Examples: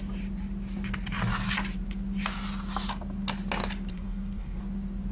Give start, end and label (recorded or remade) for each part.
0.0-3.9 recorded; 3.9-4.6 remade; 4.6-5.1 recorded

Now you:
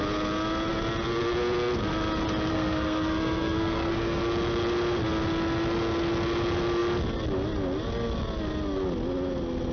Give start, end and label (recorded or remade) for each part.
0.0-2.5 recorded; 2.5-4.2 remade; 4.2-9.7 recorded

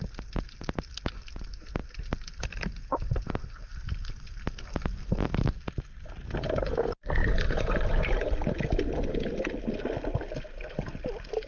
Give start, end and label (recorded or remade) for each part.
0.0-7.2 recorded; 7.2-8.6 remade; 8.6-11.5 recorded